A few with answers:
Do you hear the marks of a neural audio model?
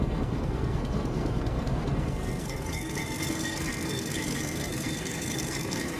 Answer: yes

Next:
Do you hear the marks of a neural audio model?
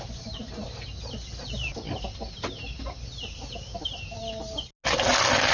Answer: no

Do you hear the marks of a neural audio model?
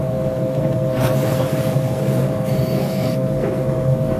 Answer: yes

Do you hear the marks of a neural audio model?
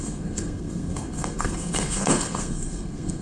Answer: yes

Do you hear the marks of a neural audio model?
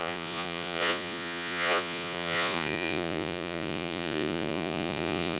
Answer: yes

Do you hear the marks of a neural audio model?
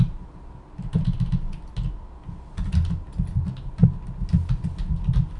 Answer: no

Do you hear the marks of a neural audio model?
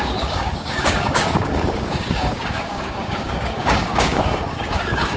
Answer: yes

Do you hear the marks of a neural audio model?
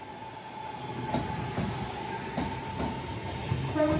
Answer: no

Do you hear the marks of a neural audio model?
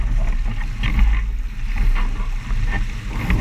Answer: no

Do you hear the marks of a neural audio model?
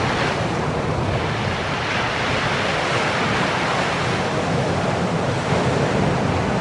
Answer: no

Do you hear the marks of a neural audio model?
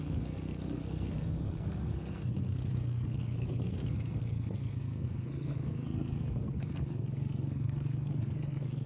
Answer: yes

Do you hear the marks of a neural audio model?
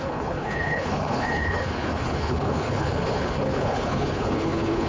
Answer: yes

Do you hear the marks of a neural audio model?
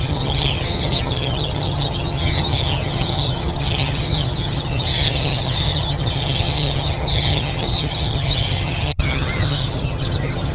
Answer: yes